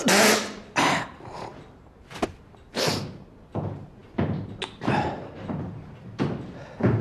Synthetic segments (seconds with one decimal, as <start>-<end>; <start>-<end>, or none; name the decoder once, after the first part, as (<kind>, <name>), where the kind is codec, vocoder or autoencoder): none

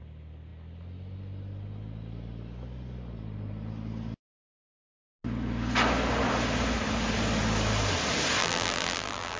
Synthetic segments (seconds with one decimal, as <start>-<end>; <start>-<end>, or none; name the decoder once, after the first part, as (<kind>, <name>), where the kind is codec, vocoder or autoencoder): 8.4-9.4 (vocoder, BigVGAN v2)

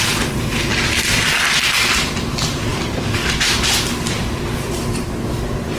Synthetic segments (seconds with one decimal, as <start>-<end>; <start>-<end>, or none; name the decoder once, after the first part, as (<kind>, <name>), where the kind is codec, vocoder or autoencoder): none

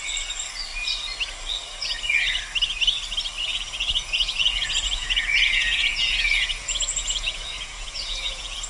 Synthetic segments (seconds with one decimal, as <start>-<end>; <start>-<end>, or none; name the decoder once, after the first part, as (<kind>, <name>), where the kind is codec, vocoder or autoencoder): 3.5-8.7 (vocoder, Vocos)

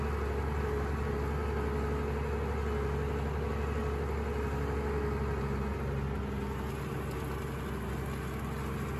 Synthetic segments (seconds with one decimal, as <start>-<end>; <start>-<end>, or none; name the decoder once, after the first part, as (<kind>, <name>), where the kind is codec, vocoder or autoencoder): none

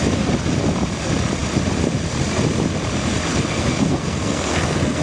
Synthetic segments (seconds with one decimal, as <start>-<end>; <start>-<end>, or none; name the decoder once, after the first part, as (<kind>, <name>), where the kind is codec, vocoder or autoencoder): 3.3-5.0 (codec, SNAC)